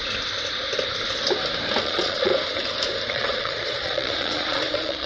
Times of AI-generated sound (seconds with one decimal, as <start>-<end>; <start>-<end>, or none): 1.8-2.3; 3.1-5.1